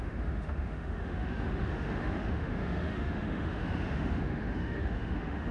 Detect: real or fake fake